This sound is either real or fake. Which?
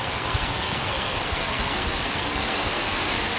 fake